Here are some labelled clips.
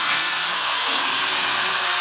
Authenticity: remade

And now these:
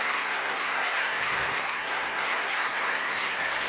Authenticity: remade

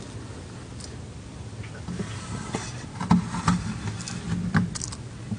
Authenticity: recorded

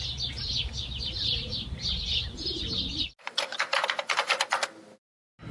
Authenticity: recorded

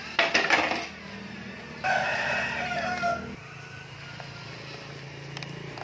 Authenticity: recorded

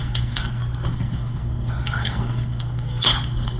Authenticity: remade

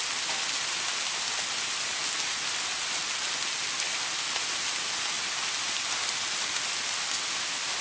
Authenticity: recorded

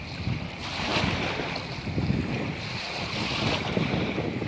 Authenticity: recorded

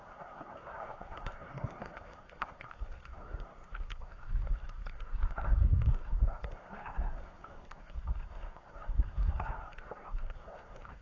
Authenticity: remade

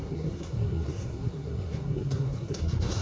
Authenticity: remade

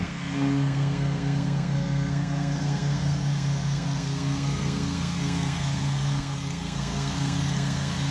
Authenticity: remade